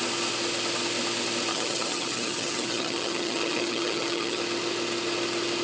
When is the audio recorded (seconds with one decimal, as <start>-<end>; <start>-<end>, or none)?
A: 0.0-1.5; 4.4-5.6